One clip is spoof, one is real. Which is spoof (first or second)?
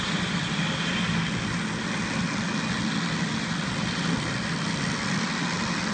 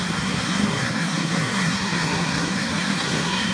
second